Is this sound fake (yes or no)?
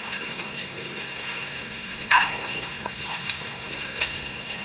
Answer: yes